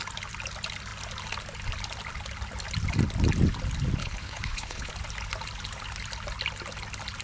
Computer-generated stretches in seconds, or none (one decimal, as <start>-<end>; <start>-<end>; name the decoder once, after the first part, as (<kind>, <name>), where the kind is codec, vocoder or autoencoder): 4.0-4.9 (codec, HILCodec)